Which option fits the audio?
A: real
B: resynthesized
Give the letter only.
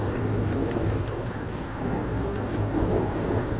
B